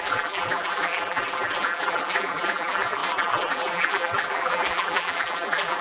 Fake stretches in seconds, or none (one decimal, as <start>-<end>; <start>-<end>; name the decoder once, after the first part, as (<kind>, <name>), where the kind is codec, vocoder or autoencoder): 0.0-5.8 (vocoder, BigVGAN v2)